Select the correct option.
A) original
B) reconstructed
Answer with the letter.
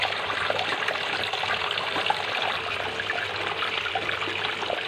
A